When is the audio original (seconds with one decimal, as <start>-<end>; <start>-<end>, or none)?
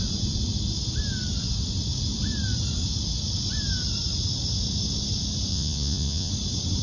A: 0.0-5.5; 6.3-6.8